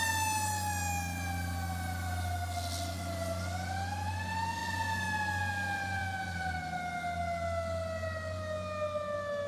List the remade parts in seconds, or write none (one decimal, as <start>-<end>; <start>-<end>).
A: none